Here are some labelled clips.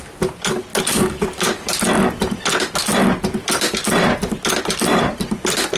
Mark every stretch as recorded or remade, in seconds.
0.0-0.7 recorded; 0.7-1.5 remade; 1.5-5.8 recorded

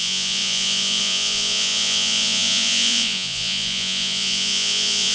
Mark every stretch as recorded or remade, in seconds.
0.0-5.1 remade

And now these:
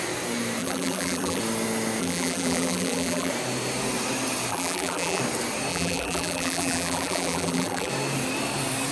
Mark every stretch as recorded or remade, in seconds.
0.0-0.6 recorded; 0.6-1.4 remade; 1.4-2.0 recorded; 2.0-3.3 remade; 3.3-4.5 recorded; 4.5-5.2 remade; 5.2-5.7 recorded; 5.7-7.9 remade; 7.9-8.9 recorded

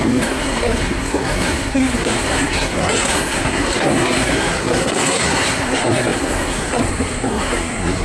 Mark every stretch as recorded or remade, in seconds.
0.0-8.0 remade

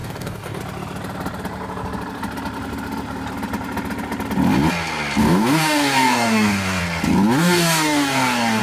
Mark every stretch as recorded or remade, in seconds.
0.0-0.6 remade; 0.6-5.2 recorded; 5.2-6.8 remade; 6.8-7.4 recorded; 7.4-8.6 remade

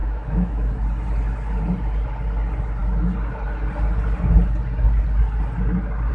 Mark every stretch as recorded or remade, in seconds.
0.0-0.7 remade; 0.7-6.1 recorded